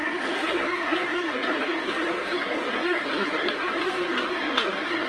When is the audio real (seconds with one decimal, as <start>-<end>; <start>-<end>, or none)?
none